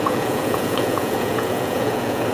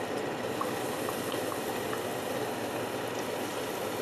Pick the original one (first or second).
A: second